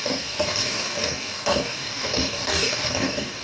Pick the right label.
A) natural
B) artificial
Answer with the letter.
B